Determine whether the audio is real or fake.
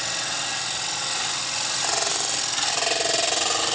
real